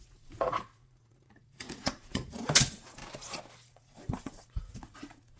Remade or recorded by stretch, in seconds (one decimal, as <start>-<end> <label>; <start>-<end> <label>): 0.0-3.0 remade; 3.0-3.7 recorded; 3.7-5.4 remade